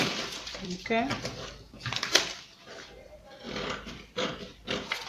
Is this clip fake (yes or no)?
yes